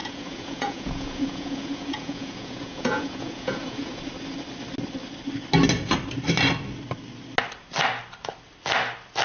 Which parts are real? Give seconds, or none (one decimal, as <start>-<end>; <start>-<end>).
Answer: 4.0-9.2